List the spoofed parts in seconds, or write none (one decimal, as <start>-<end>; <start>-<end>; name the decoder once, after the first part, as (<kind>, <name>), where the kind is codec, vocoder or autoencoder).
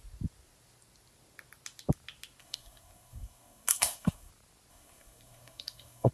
2.4-4.3 (codec, SNAC); 4.7-6.1